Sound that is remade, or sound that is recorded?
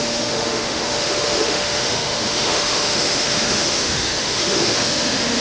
remade